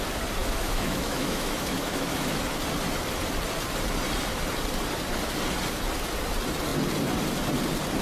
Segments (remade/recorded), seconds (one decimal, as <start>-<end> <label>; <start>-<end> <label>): 0.0-0.4 recorded; 0.4-2.4 remade; 2.4-8.0 recorded